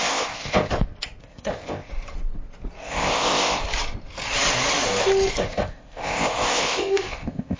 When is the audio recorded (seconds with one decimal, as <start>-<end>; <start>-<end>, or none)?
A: 0.7-1.2; 1.9-2.8; 3.6-5.4